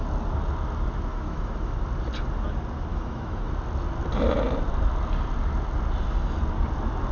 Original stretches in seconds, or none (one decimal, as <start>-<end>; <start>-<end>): 0.0-1.1; 1.8-2.9; 3.5-7.1